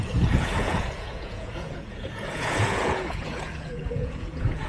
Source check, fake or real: fake